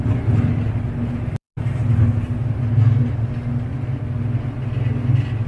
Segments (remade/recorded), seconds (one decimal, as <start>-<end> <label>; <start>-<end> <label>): 0.0-5.5 recorded